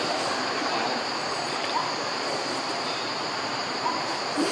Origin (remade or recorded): remade